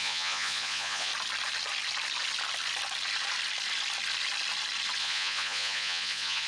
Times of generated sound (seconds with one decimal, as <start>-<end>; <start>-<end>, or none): 0.0-1.1; 5.0-6.5